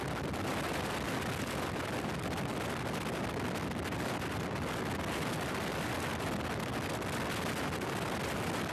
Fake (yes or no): no